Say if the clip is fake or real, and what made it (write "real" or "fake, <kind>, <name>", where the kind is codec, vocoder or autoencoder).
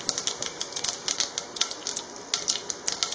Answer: real